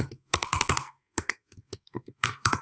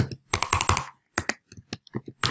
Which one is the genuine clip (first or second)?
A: second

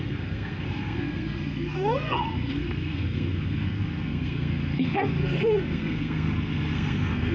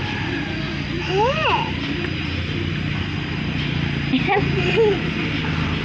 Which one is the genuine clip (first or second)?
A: second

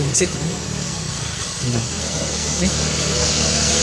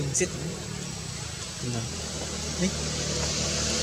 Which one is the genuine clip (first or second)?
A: second